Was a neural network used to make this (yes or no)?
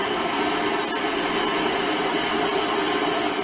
no